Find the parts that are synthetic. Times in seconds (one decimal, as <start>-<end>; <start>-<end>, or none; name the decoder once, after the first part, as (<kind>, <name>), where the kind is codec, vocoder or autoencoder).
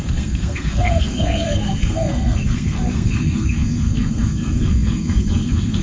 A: 0.0-5.8 (codec, SNAC)